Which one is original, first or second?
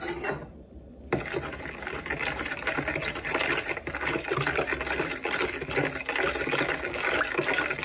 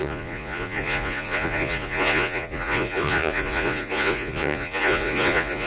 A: first